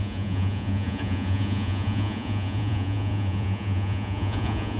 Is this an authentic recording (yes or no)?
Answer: no